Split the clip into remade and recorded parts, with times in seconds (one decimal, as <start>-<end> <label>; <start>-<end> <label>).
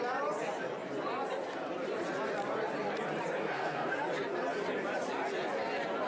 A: 0.0-3.4 recorded; 3.4-4.0 remade; 4.0-6.1 recorded